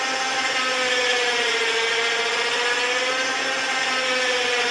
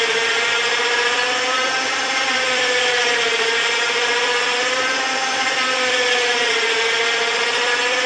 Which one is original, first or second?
first